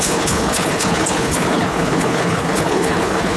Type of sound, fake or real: fake